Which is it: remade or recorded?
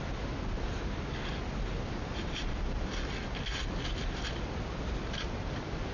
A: recorded